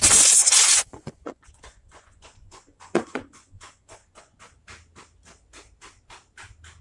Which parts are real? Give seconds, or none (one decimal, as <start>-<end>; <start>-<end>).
0.0-0.4; 4.4-6.8